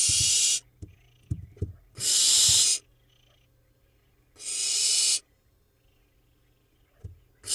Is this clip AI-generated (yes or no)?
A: no